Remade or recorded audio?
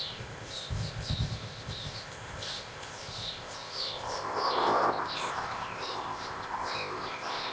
remade